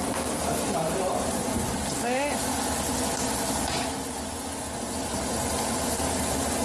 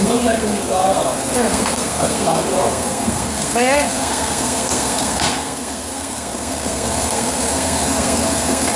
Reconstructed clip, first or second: second